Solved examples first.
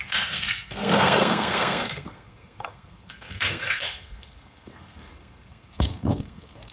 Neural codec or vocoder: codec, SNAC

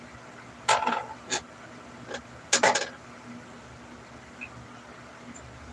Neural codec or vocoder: none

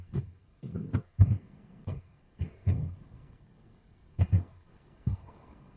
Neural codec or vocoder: codec, SNAC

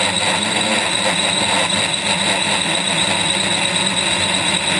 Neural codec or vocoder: none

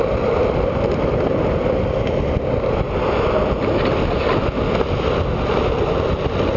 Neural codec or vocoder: none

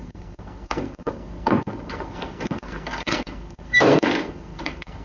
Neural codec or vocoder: codec, SNAC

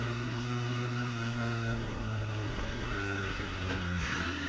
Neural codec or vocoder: codec, SNAC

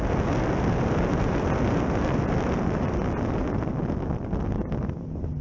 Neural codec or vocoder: none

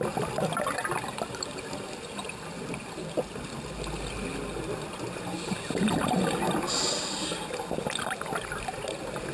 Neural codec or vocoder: none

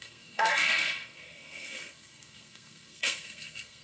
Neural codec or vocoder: codec, SNAC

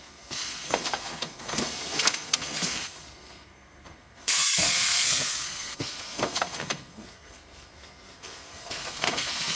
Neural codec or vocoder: codec, SNAC